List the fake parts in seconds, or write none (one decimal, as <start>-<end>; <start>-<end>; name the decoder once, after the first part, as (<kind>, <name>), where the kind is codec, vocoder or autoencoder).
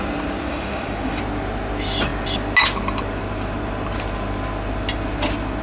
0.5-1.2 (autoencoder, DAC-VAE)